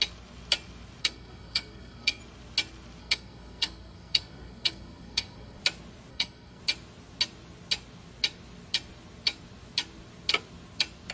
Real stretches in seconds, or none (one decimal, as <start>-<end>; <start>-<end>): 0.0-1.0; 2.2-3.0; 5.6-6.1; 6.6-11.1